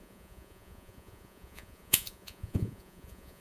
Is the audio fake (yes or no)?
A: yes